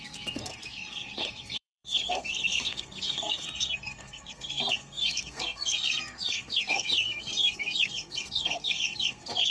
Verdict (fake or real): fake